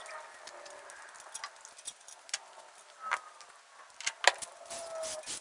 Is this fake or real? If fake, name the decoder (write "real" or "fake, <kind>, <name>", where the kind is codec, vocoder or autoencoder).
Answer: real